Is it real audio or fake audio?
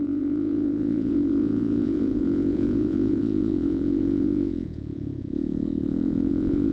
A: fake